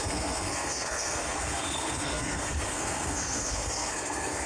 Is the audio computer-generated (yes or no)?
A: yes